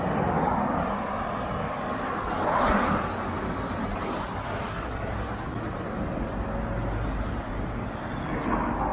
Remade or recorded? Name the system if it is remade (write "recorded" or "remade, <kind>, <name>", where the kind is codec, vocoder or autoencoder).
recorded